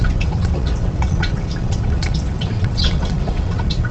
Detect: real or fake fake